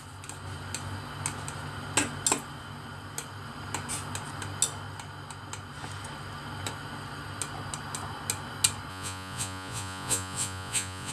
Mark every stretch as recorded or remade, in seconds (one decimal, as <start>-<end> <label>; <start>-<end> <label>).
0.0-8.9 recorded; 8.9-11.1 remade